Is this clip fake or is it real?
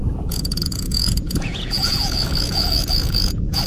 fake